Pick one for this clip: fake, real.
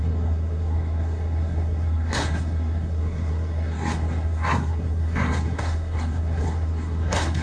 fake